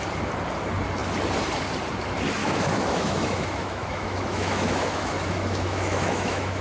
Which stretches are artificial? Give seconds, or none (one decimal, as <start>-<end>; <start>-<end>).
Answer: 2.4-6.6